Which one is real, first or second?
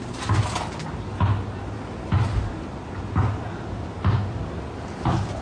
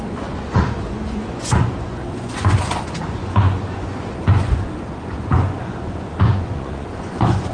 first